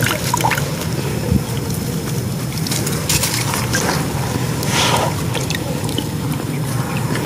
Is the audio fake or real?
real